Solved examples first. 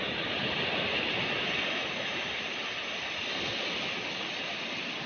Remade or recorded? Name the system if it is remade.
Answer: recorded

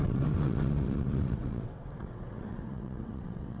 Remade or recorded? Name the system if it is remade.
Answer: remade, vocoder, WaveNeXt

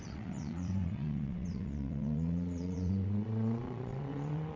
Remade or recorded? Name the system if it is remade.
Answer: remade, vocoder, WaveNeXt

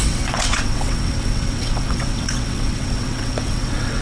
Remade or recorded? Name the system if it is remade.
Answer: remade, vocoder, WaveNeXt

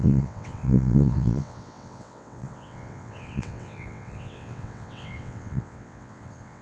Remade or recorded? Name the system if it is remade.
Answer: remade, vocoder, WaveNeXt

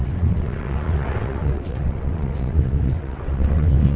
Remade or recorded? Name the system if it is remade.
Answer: remade, vocoder, WaveNeXt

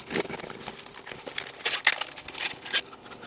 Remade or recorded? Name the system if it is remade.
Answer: recorded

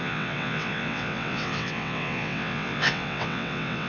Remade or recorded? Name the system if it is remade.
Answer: remade, vocoder, WaveNeXt